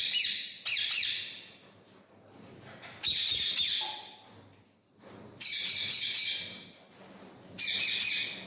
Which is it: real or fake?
real